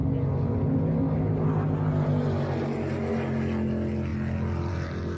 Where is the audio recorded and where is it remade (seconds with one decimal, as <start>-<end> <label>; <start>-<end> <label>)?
0.0-5.2 recorded